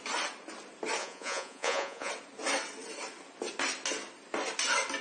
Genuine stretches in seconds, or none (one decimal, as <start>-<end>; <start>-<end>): 0.0-1.0; 2.1-5.0